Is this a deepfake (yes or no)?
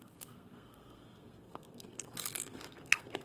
yes